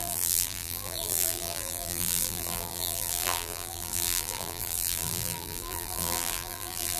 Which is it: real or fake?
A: fake